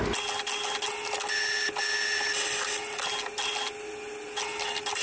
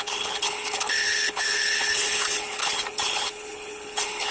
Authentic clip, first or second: first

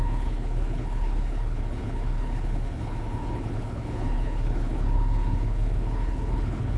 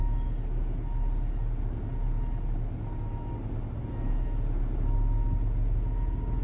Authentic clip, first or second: second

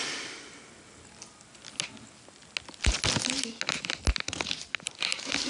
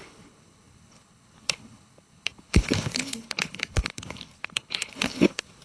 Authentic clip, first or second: first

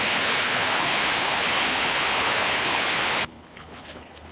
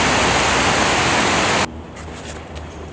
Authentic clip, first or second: second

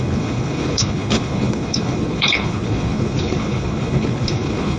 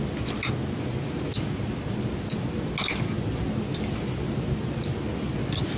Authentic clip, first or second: second